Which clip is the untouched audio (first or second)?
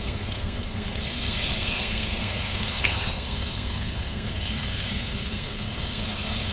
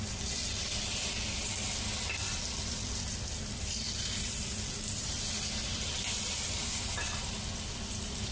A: second